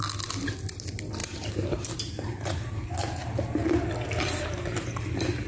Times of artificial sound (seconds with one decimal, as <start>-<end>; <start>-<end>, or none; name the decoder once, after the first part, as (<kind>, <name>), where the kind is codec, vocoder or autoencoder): 1.2-3.9 (vocoder, BigVGAN v2)

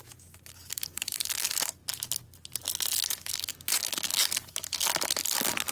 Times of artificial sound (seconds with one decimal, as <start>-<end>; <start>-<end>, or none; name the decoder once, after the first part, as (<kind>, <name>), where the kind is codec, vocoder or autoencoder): 0.0-1.8 (codec, DAC); 3.1-4.1

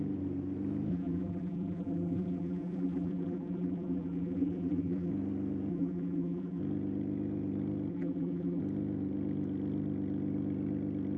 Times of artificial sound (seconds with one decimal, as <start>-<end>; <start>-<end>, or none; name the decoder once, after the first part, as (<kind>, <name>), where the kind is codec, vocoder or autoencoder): 0.9-5.1 (vocoder, BigVGAN v2); 5.7-6.6; 7.9-8.6

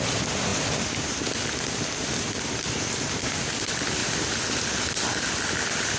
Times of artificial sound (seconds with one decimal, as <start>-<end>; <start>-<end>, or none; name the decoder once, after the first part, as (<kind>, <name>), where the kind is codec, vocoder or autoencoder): none

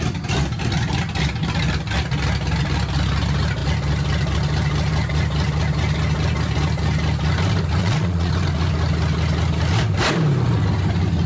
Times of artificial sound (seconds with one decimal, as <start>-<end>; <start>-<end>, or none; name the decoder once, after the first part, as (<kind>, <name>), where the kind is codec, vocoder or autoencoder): 7.8-8.3 (vocoder, Vocos)

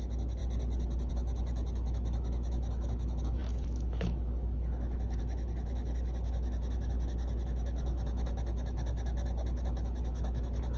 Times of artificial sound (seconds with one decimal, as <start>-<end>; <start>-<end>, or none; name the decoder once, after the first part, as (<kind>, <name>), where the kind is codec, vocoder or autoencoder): 0.0-0.4 (autoencoder, DAC-VAE); 1.1-10.8